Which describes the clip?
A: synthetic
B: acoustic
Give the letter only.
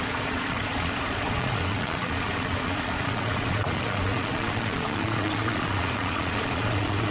A